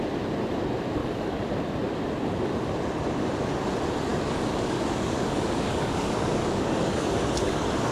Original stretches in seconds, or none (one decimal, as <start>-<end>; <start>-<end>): 0.0-1.0; 1.5-4.1